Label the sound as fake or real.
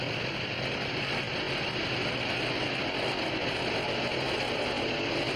real